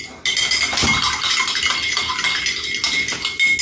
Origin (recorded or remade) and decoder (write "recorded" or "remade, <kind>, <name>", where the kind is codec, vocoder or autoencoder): recorded